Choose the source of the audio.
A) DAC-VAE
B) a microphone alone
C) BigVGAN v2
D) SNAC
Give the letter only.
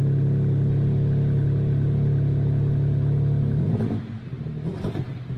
B